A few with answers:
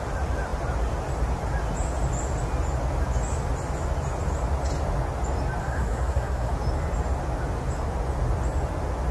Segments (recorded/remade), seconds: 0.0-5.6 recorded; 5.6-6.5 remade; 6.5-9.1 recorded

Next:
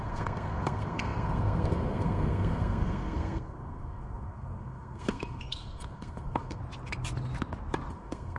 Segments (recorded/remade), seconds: 0.0-6.6 remade; 6.6-7.9 recorded; 7.9-8.4 remade

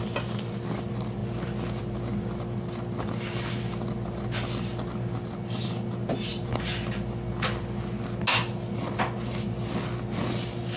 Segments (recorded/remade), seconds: 0.0-10.8 recorded